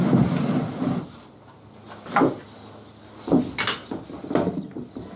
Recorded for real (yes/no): yes